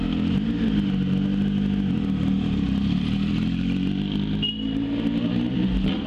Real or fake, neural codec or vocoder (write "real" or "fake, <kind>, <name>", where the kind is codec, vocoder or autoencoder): real